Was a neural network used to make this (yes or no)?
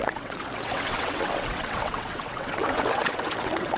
yes